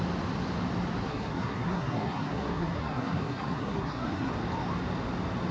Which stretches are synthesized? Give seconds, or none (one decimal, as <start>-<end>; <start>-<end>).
1.0-4.3